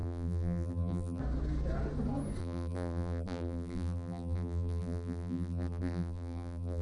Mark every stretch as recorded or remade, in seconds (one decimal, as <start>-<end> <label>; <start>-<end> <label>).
0.0-1.2 remade; 1.2-2.4 recorded; 2.4-6.8 remade